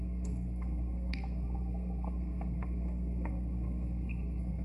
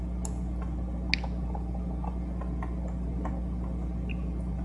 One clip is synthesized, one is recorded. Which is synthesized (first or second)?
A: first